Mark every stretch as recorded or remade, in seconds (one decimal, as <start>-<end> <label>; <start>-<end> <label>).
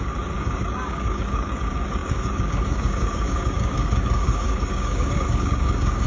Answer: 0.0-6.1 remade